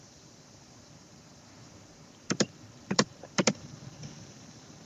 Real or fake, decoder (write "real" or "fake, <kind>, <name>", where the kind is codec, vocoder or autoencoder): fake, vocoder, BigVGAN v2